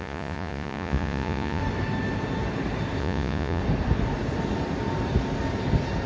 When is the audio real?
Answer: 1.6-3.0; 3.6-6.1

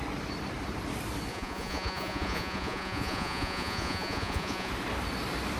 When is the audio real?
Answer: 0.0-1.3; 4.7-5.6

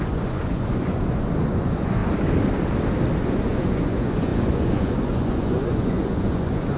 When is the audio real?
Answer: 2.0-3.2

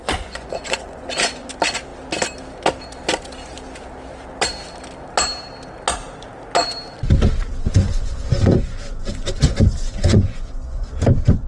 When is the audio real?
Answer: 1.5-7.6; 10.9-11.5

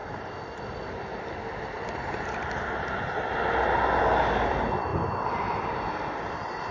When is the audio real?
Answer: 0.0-6.7

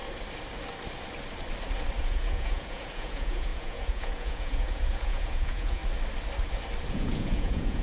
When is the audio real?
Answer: 0.0-2.0; 5.8-6.9